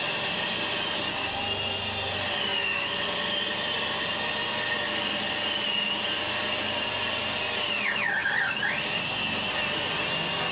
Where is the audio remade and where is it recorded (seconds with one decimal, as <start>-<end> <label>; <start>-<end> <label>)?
0.0-10.5 recorded